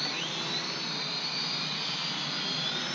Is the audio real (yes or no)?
yes